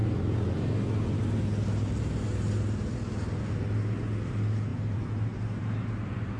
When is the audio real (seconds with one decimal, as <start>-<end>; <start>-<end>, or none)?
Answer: 0.0-4.7; 5.4-6.4